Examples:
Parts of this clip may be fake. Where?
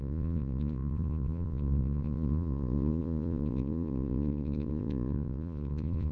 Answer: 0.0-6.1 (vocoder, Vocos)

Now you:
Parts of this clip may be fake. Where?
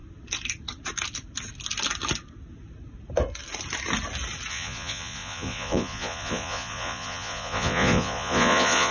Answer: 4.5-8.9 (vocoder, Vocos)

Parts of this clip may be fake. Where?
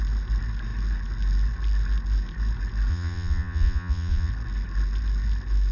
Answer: 2.9-4.3 (vocoder, Vocos)